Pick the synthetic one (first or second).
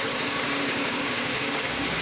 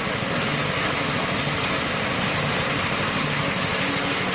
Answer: first